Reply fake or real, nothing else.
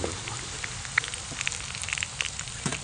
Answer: real